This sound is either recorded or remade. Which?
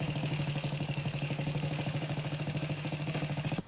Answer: remade